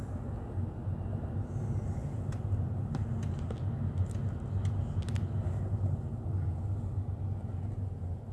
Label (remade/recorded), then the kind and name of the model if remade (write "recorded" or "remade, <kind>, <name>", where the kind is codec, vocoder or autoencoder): recorded